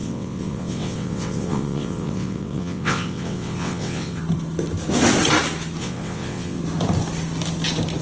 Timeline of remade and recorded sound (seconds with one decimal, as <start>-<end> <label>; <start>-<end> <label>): 0.0-4.2 remade; 4.2-5.8 recorded; 5.8-6.6 remade; 6.6-8.0 recorded